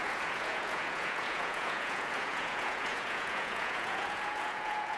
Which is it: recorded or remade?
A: remade